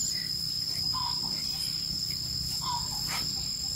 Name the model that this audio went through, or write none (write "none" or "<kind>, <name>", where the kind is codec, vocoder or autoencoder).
vocoder, BigVGAN v2